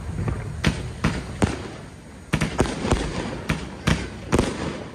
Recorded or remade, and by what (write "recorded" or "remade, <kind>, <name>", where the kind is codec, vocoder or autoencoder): recorded